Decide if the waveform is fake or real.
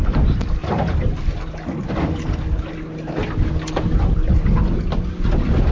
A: real